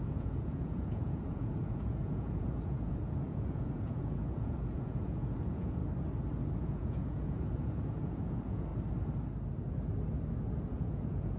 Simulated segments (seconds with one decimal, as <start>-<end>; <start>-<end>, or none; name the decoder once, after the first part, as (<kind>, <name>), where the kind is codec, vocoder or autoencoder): 0.0-5.8 (vocoder, Vocos); 6.5-8.7; 10.7-11.4